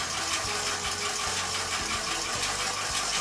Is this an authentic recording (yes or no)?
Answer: yes